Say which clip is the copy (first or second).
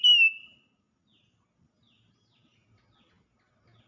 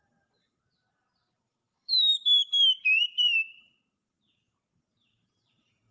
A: second